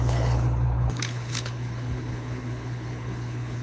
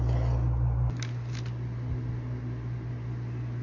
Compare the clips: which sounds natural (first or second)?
second